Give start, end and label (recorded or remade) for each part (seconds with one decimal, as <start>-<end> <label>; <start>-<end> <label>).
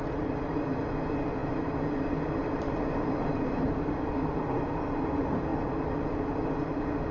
0.0-2.4 recorded; 2.4-3.6 remade; 3.6-7.1 recorded